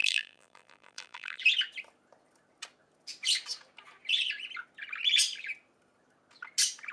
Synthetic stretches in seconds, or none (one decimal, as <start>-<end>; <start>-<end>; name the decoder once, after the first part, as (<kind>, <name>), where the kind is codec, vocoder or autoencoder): 0.0-1.4 (vocoder, BigVGAN v2)